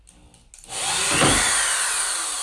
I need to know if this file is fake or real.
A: real